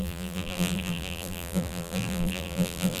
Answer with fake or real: fake